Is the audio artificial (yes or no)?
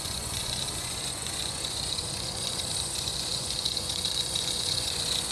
yes